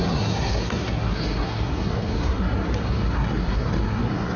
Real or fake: fake